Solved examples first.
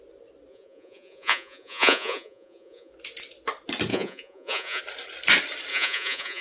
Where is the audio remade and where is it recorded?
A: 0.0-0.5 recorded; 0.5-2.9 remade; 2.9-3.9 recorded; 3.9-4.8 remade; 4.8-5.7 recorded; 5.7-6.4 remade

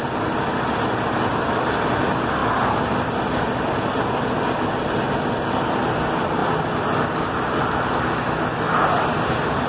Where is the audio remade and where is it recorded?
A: 0.0-9.7 recorded

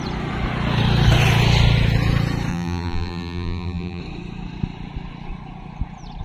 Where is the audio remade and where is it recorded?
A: 0.0-2.5 recorded; 2.5-4.0 remade; 4.0-6.2 recorded